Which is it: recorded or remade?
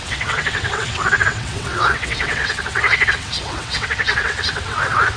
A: remade